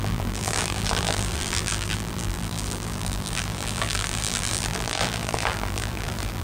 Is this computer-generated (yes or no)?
yes